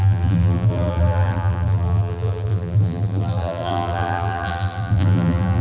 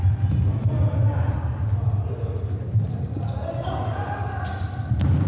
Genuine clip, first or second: second